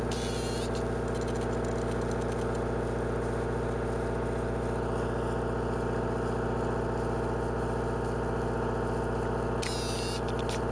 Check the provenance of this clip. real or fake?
real